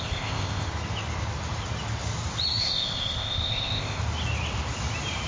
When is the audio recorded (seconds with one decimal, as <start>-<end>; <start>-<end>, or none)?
0.7-2.6; 4.0-5.3